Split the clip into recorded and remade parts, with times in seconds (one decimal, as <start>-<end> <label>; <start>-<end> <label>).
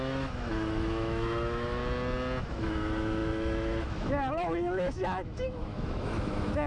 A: 0.0-1.8 remade; 1.8-2.4 recorded; 2.4-6.7 remade